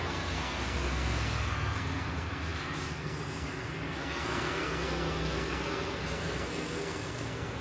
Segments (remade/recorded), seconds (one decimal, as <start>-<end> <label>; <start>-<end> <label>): 0.0-7.6 remade